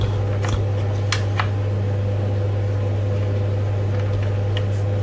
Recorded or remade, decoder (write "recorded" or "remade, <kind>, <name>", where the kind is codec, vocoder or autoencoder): recorded